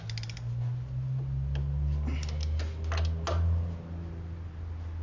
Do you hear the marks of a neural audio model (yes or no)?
no